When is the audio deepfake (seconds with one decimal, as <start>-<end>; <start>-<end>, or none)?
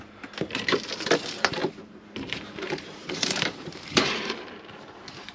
1.6-4.8